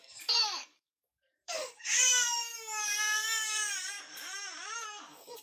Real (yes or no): no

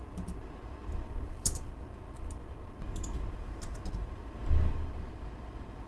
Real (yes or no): yes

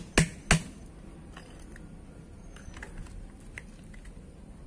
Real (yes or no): yes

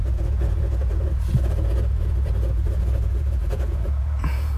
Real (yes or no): no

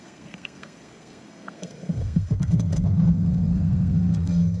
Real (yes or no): no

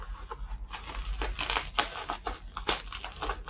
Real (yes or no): yes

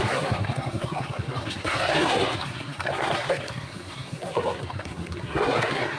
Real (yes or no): no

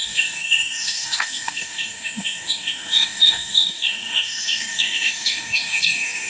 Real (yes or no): no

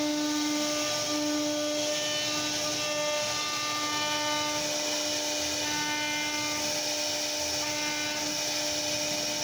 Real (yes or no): yes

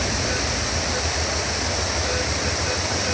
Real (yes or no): yes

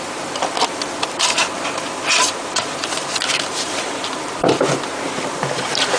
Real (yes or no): no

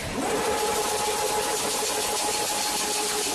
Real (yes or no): yes